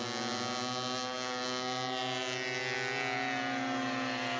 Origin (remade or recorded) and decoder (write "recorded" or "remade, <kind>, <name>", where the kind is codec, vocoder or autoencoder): recorded